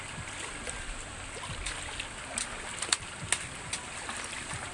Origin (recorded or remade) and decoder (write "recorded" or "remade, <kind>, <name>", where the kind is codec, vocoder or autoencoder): recorded